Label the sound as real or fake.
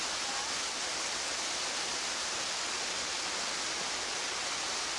real